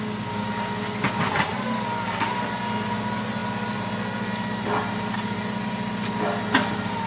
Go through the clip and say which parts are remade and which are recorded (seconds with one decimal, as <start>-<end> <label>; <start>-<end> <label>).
0.0-7.1 recorded

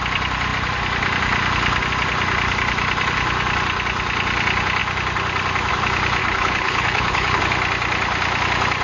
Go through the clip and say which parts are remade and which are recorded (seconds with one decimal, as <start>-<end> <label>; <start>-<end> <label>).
0.0-6.2 recorded; 6.2-7.4 remade; 7.4-8.8 recorded

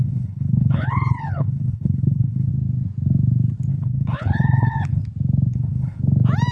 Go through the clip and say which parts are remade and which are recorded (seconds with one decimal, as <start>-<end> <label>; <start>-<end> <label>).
0.0-2.5 remade; 2.5-3.7 recorded; 3.7-5.0 remade; 5.0-5.5 recorded; 5.5-6.0 remade; 6.0-6.5 recorded

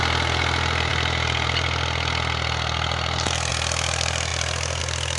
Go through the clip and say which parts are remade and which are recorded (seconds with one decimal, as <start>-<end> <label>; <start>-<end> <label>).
0.0-5.2 recorded